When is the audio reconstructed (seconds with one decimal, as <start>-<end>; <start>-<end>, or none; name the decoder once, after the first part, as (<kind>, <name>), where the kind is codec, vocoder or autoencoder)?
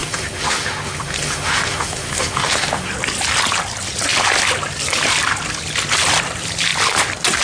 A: 0.0-2.9 (autoencoder, DAC-VAE)